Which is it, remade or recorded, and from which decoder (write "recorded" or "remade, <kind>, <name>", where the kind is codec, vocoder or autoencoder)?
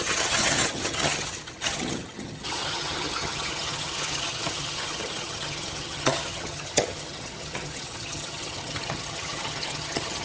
remade, vocoder, HiFi-GAN